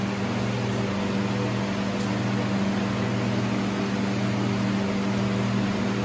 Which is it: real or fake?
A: real